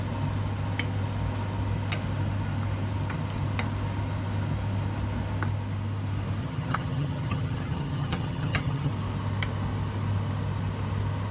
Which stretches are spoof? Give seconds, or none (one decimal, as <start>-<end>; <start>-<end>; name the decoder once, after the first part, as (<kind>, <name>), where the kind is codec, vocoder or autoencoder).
6.4-8.9 (vocoder, HiFi-GAN)